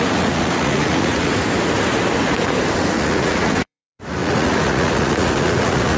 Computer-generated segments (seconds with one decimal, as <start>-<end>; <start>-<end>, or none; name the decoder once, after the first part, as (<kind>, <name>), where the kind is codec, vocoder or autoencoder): 0.0-1.3 (vocoder, Vocos); 2.9-6.0